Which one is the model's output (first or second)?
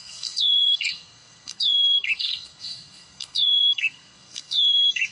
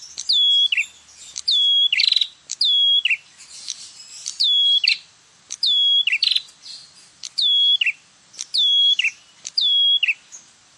first